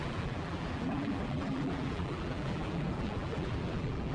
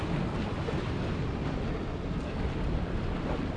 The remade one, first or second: first